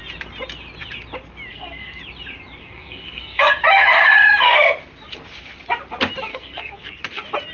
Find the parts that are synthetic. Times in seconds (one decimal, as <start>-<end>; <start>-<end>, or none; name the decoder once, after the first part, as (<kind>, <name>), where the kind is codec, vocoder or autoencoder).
1.5-2.0 (codec, SNAC); 2.6-3.5; 6.3-7.0